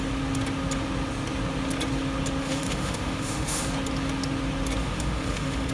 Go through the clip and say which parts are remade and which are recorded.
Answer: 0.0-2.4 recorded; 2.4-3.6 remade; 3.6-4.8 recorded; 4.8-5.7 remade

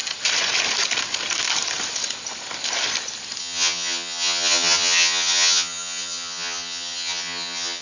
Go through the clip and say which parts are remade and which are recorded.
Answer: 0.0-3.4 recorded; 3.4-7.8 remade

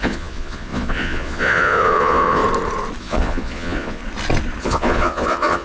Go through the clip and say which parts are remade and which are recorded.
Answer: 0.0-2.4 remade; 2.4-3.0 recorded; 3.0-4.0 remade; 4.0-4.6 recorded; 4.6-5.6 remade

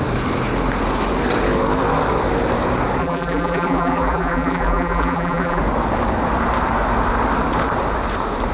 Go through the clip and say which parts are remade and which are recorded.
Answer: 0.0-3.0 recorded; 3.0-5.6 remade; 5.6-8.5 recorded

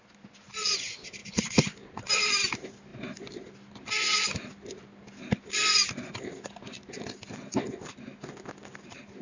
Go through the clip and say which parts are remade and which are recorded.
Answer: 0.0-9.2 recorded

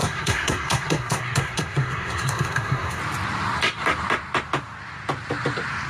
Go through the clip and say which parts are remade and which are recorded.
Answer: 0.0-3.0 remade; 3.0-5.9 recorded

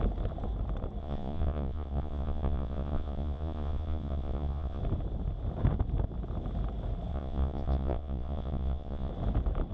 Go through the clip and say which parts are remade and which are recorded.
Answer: 0.0-1.0 recorded; 1.0-4.8 remade; 4.8-7.1 recorded; 7.1-9.1 remade; 9.1-9.7 recorded

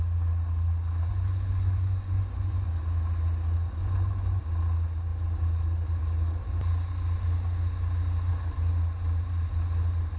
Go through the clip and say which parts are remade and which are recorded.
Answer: 0.0-1.1 recorded; 1.1-2.7 remade; 2.7-3.8 recorded; 3.8-4.4 remade; 4.4-10.2 recorded